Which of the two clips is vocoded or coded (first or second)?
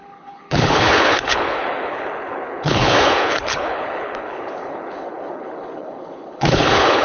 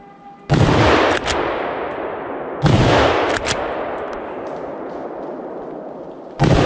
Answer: first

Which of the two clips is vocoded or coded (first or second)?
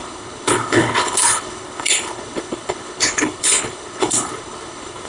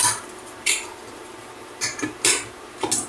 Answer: first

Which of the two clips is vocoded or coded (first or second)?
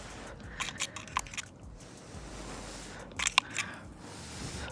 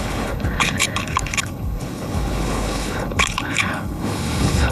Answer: second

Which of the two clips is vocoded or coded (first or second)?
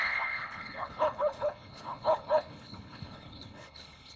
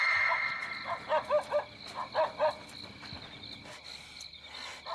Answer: first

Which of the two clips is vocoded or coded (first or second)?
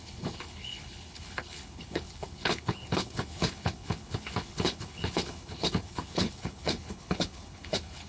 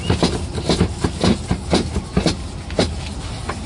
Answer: first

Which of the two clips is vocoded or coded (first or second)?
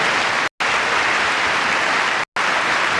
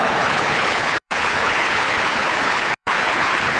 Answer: second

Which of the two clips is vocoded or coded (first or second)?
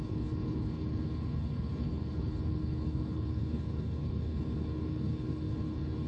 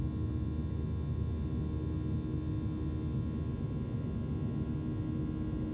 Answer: first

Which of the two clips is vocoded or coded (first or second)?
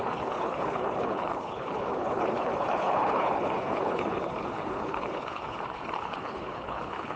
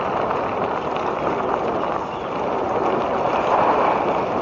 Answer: first